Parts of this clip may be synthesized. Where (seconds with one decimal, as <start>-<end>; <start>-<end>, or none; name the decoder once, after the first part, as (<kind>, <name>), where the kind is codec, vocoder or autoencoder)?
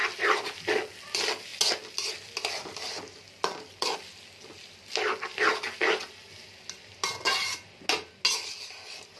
none